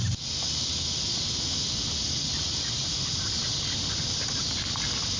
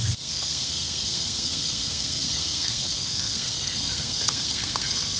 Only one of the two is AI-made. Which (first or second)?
second